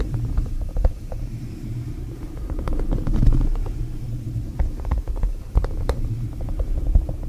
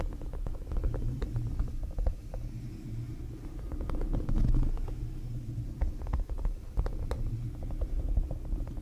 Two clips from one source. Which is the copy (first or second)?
first